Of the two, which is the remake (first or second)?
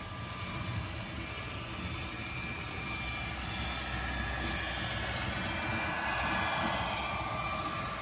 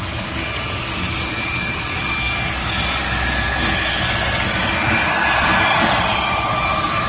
second